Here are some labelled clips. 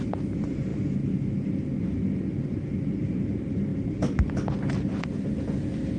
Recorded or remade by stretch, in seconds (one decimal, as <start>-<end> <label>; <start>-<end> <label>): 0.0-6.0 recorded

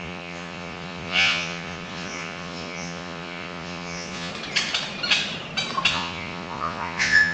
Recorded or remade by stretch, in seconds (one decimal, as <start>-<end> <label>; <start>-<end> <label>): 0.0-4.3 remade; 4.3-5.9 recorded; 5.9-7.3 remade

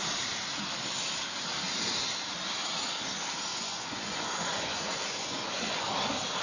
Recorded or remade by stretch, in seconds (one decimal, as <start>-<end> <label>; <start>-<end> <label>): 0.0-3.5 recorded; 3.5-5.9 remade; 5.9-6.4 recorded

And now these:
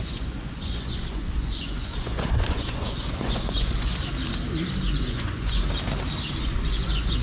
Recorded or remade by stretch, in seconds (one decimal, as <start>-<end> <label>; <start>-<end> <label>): 0.0-3.9 remade; 3.9-4.9 recorded; 4.9-5.6 remade; 5.6-6.4 recorded; 6.4-7.2 remade

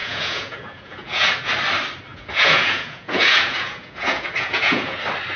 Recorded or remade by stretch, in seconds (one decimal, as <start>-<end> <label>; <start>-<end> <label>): 0.0-1.5 remade; 1.5-2.1 recorded; 2.1-5.0 remade; 5.0-5.4 recorded